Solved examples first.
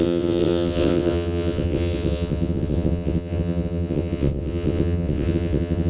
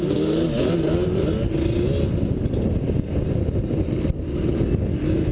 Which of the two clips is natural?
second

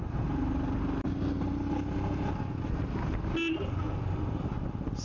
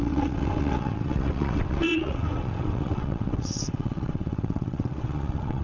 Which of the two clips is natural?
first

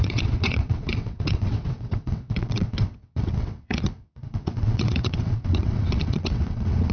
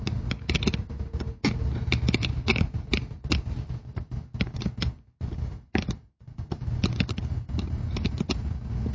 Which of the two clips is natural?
second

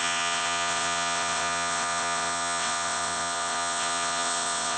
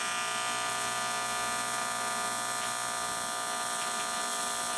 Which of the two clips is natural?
second